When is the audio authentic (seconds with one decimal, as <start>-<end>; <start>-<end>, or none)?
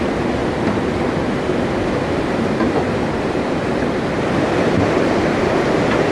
0.0-6.1